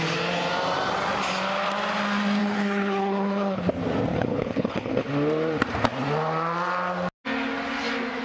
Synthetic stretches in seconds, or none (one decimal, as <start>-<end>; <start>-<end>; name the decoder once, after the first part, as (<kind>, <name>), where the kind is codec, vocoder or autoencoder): 2.4-3.6 (codec, HILCodec); 4.1-5.1